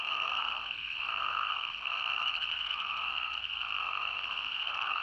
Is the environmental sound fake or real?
fake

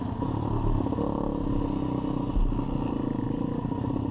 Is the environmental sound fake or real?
real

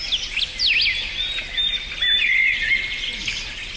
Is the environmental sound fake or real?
real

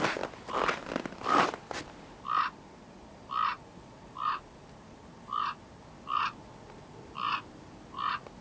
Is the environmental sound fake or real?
real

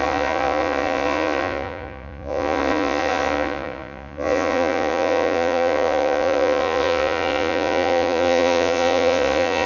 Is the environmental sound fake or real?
fake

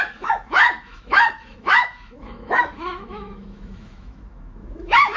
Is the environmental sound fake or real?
fake